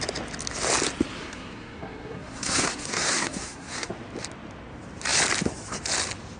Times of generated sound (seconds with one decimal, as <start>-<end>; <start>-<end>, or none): 1.2-3.9